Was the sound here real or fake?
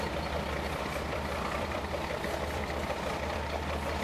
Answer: fake